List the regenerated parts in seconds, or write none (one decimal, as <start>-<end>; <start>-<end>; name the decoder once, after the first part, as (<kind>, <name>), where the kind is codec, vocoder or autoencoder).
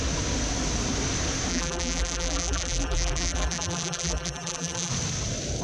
1.5-4.9 (vocoder, BigVGAN v2)